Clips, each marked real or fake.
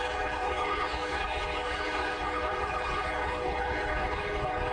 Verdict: fake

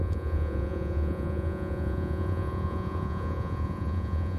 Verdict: fake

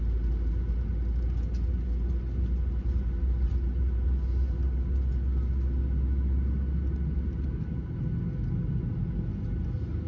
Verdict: real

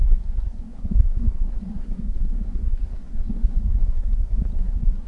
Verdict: fake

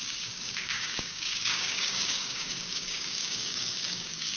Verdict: fake